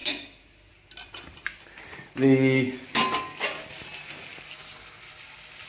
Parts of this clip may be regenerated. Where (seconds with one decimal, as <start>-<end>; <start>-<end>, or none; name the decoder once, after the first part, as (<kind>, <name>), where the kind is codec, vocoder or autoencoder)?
0.0-0.7 (autoencoder, DAC-VAE)